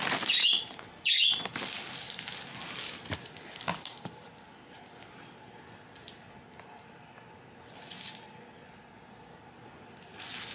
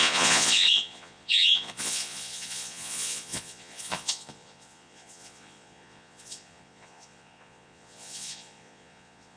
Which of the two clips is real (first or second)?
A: first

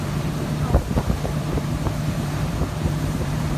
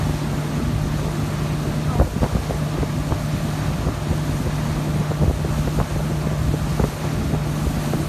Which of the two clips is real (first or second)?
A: second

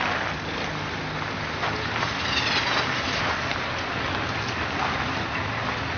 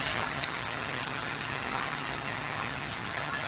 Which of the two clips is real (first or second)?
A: first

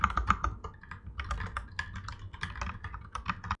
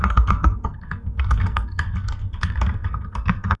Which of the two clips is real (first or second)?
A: first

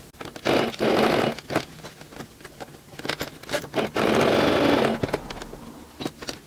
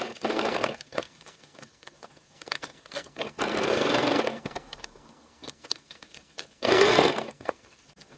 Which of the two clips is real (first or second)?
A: first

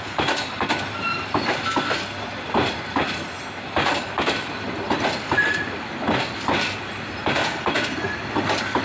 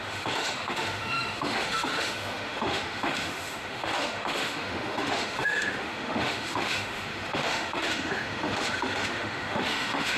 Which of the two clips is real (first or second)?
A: first